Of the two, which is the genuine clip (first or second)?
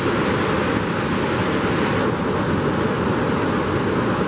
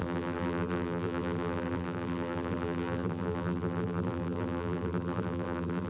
first